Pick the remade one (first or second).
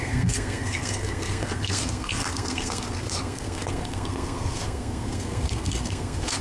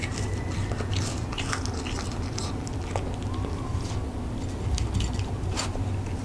first